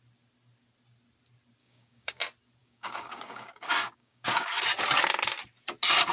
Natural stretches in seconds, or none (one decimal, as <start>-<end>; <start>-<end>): 0.0-1.6; 2.2-2.6; 4.5-6.1